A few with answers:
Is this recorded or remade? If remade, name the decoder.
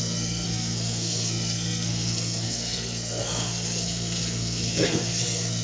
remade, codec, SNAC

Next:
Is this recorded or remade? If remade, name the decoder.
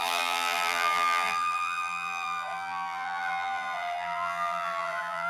remade, vocoder, BigVGAN v2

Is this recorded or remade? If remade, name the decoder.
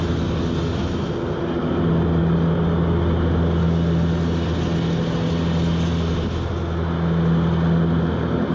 recorded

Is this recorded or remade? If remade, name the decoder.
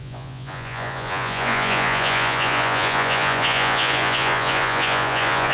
remade, vocoder, Vocos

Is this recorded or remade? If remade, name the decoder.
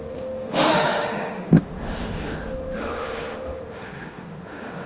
remade, autoencoder, DAC-VAE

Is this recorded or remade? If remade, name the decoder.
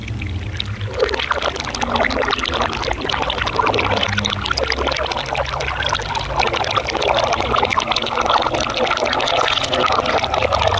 recorded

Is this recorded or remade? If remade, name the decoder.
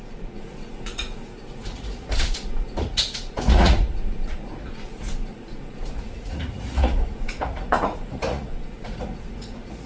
remade, vocoder, Vocos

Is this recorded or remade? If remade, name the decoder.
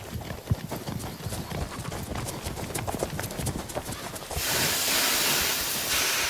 recorded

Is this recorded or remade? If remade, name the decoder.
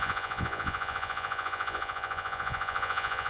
remade, vocoder, Vocos